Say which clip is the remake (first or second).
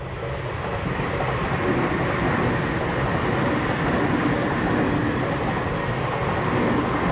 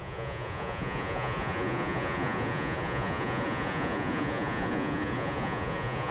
second